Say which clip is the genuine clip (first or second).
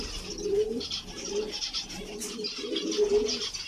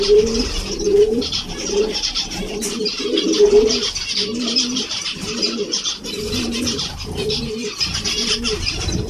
first